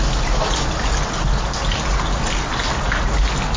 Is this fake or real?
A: real